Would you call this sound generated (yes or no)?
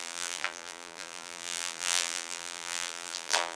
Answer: yes